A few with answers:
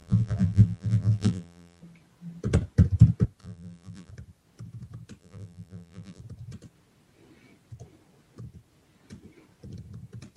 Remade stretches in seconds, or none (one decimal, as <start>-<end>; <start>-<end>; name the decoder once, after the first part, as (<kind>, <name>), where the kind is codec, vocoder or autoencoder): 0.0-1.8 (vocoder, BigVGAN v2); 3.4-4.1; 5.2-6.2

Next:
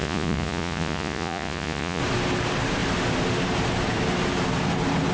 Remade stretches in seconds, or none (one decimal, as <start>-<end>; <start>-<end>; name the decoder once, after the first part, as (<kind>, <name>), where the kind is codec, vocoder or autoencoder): 0.0-2.0 (vocoder, Vocos)

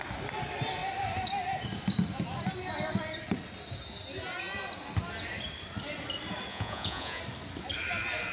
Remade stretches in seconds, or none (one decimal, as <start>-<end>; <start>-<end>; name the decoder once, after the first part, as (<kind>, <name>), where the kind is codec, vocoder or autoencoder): 6.5-7.2 (vocoder, Vocos)

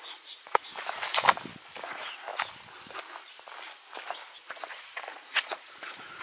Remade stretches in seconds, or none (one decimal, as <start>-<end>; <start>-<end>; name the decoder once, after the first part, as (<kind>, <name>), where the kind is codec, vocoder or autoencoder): 0.0-0.7 (vocoder, Vocos); 1.8-2.3; 4.5-6.2

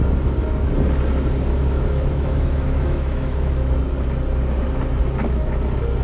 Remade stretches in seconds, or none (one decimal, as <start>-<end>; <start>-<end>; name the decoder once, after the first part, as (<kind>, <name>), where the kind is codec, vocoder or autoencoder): 1.5-3.5 (autoencoder, DAC-VAE)

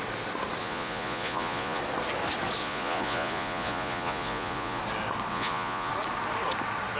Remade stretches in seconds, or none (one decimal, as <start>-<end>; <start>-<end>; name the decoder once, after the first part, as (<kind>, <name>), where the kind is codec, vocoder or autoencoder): 0.6-1.8 (vocoder, Vocos); 2.6-4.8; 5.3-5.9

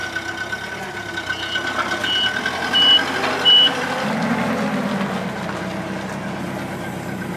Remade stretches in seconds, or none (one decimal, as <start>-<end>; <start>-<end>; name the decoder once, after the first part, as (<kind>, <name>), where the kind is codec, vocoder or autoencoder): none

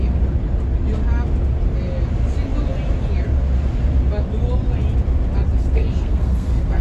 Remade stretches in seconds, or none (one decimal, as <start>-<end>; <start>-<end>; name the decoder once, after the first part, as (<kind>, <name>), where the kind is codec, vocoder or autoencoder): 5.6-6.8 (codec, SNAC)